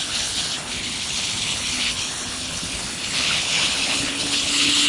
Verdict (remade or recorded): remade